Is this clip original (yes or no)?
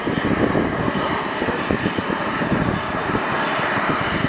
no